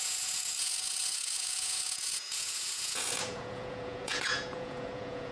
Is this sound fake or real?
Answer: fake